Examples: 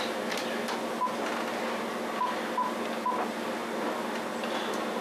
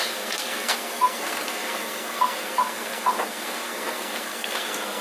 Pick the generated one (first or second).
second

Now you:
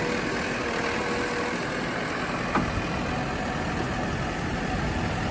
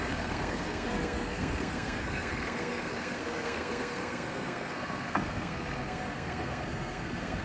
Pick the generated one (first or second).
second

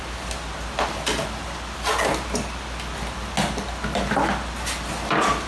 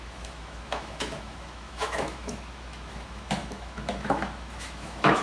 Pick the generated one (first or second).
second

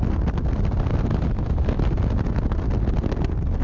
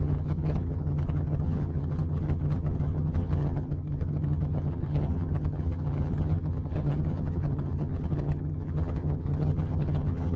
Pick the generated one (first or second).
second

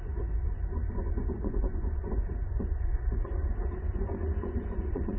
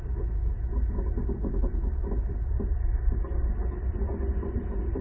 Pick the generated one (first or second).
first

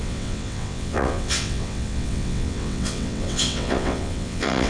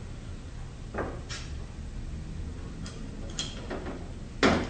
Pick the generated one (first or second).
first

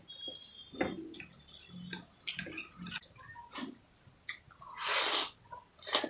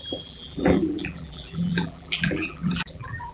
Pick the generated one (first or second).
second